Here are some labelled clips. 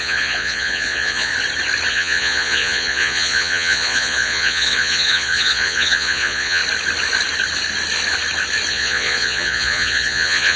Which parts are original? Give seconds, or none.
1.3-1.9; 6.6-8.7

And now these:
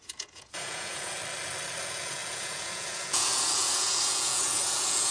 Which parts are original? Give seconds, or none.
1.2-1.8

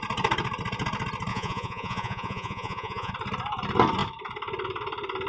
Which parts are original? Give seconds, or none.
0.0-1.3; 3.1-5.3

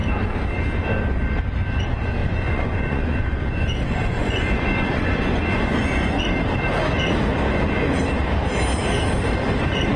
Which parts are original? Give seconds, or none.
0.0-2.2; 6.2-10.0

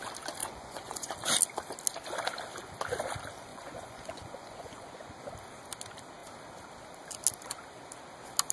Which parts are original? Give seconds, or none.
0.0-0.4; 1.1-3.5; 5.1-8.5

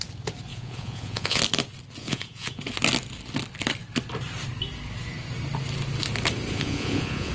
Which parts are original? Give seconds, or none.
0.0-0.5; 1.4-2.0; 2.6-6.5

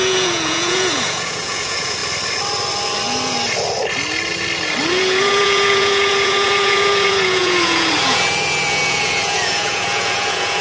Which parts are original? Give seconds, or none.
2.0-4.9